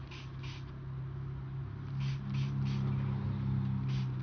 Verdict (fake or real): real